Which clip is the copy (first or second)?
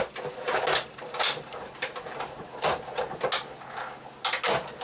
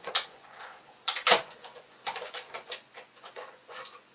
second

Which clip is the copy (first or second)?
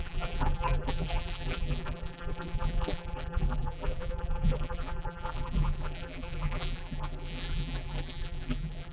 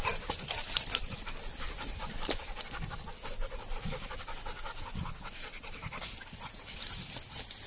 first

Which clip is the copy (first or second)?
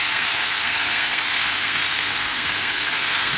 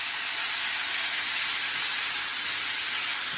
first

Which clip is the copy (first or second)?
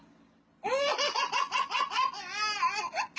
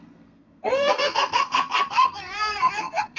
second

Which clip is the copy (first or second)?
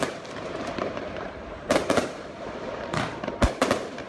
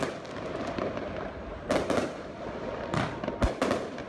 first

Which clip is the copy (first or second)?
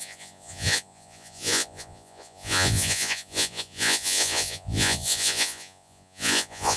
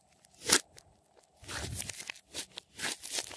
first